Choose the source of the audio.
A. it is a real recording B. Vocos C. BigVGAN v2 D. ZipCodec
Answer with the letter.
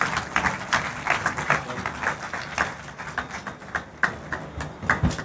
A